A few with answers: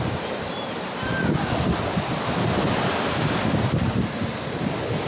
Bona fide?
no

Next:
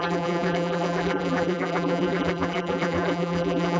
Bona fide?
no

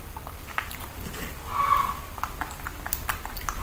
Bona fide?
yes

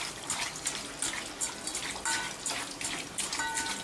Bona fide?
no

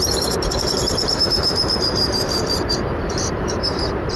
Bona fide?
no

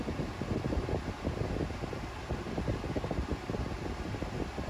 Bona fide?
yes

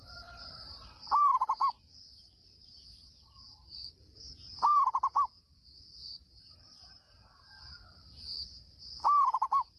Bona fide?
no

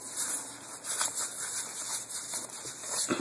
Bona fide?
yes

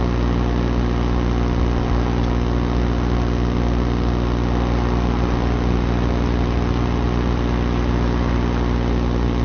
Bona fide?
yes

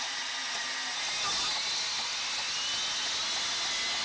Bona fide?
yes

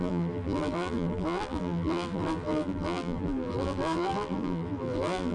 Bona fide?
no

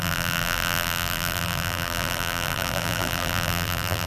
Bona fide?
no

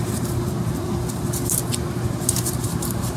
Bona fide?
no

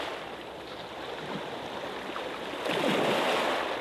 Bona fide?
yes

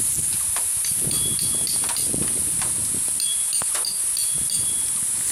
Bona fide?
yes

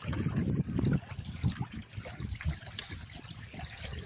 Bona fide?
no